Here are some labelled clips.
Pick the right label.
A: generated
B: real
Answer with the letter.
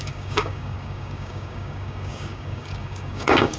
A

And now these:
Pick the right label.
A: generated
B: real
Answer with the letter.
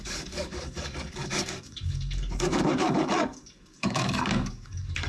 A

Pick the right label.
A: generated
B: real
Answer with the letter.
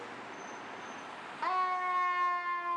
B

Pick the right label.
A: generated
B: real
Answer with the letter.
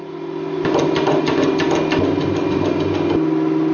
B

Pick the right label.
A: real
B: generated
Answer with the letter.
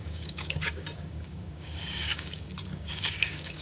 B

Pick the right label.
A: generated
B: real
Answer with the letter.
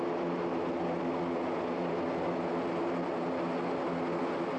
B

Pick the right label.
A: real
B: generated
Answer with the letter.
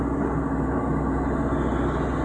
A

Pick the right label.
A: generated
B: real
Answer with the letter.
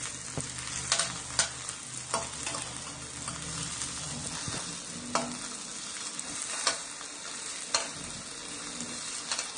B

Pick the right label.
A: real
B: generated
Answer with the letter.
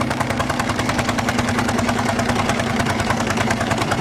B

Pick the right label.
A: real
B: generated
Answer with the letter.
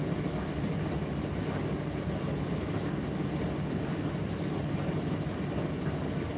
A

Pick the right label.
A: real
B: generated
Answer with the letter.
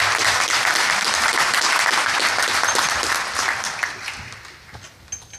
A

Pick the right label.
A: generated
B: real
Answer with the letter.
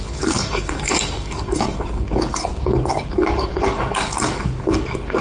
A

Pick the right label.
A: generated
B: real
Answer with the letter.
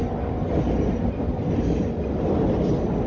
B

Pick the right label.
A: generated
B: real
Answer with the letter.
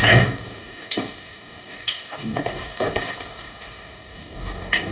A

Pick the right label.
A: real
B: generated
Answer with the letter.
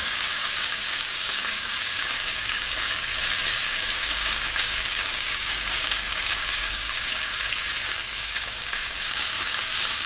B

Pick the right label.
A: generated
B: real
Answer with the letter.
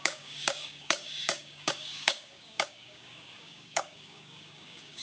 A